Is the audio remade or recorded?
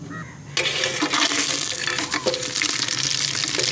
recorded